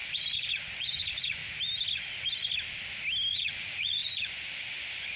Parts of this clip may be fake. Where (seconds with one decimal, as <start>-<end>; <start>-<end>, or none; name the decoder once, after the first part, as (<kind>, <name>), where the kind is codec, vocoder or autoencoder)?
0.0-1.4 (vocoder, Vocos); 3.3-5.2